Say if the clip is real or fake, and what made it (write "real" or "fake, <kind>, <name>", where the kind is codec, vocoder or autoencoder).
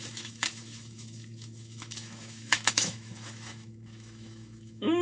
fake, autoencoder, DAC-VAE